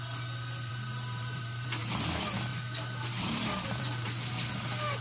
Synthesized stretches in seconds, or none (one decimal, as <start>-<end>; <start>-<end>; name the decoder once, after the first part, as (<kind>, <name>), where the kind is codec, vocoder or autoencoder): 0.7-2.1 (vocoder, BigVGAN v2); 2.5-4.5